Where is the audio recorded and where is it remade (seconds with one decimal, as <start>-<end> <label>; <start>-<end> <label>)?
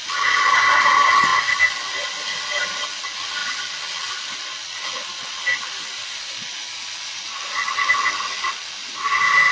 0.0-9.5 recorded